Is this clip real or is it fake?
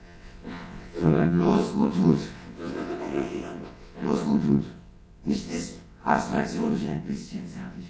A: fake